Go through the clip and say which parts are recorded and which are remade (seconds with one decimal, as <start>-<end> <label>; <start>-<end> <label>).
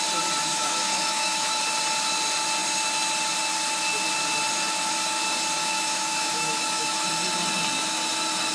0.0-0.5 recorded; 0.5-1.6 remade; 1.6-5.6 recorded; 5.6-7.1 remade; 7.1-8.5 recorded